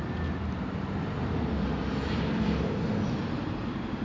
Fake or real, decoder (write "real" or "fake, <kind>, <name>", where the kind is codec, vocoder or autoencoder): fake, vocoder, BigVGAN v2